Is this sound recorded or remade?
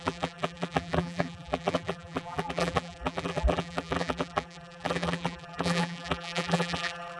remade